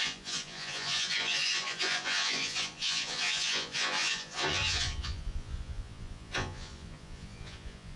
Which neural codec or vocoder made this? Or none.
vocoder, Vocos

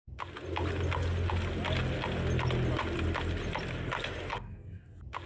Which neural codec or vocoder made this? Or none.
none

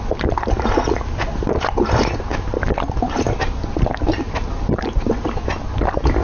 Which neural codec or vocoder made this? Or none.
none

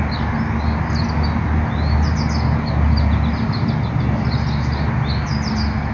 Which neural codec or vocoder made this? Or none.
none